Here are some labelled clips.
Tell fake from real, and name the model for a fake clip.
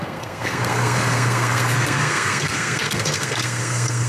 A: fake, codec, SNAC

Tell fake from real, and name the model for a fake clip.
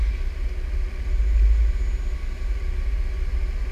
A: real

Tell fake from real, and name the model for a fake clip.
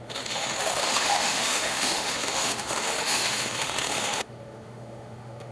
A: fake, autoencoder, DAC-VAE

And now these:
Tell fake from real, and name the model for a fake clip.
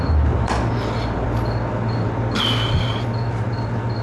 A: real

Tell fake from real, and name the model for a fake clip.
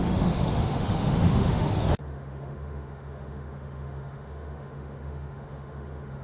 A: fake, autoencoder, DAC-VAE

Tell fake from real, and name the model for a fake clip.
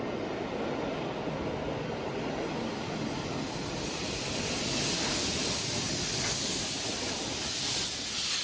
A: real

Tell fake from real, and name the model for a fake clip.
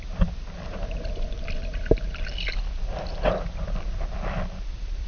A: real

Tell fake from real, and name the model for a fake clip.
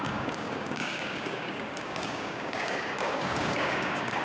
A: fake, codec, DAC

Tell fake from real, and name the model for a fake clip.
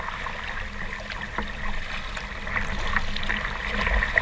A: real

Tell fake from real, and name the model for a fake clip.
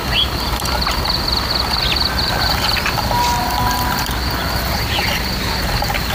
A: real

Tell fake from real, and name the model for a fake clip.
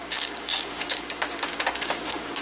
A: fake, codec, DAC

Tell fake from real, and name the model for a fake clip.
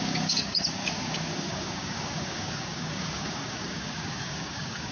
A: fake, codec, DAC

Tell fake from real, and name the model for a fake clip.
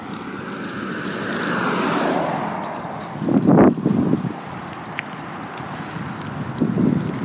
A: real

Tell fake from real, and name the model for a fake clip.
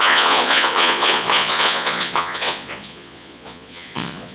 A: fake, vocoder, Vocos